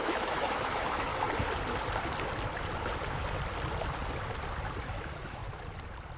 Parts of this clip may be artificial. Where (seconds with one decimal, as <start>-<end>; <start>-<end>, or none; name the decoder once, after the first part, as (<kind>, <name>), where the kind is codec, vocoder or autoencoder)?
0.0-1.1 (autoencoder, DAC-VAE); 4.8-5.4